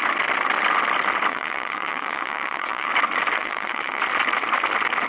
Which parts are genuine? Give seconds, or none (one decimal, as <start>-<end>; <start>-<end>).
0.0-1.3; 2.9-3.4; 4.0-5.1